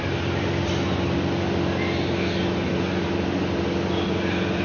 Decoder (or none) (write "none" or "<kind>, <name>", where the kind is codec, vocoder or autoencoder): none